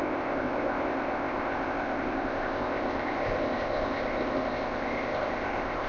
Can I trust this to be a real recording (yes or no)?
no